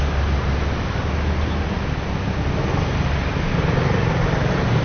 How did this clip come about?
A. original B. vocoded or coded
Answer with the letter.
A